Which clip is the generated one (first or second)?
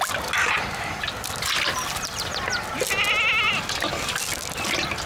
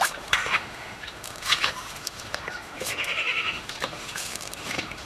second